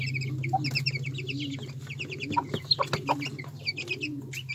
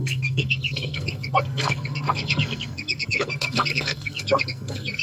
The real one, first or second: first